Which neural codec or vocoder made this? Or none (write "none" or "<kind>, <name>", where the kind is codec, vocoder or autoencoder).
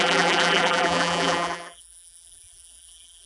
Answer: vocoder, BigVGAN v2